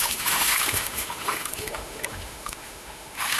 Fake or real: fake